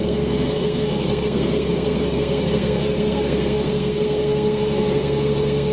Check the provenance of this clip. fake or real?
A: fake